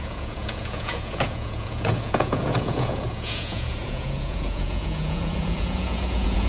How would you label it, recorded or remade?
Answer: remade